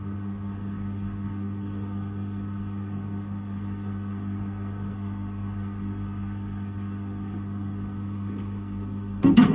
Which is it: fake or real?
fake